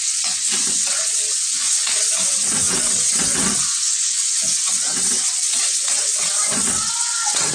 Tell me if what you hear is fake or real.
fake